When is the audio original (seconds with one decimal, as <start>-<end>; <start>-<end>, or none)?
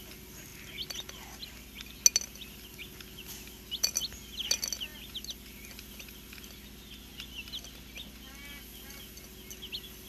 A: 0.0-10.1